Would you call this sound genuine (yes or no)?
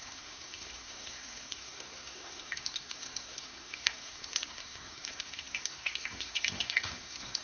no